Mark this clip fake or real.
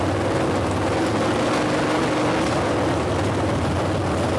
real